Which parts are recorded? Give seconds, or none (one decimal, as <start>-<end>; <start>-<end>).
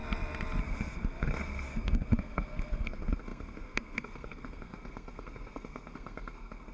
0.0-0.6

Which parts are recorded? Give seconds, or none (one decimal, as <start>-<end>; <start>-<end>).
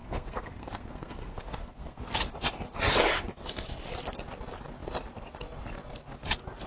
2.0-6.7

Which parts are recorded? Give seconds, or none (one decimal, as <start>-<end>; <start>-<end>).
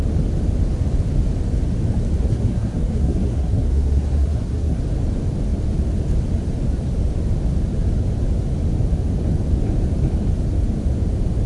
0.0-2.2; 4.8-11.5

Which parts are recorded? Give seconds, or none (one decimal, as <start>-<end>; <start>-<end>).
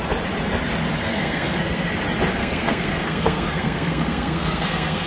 0.0-1.0; 1.9-2.4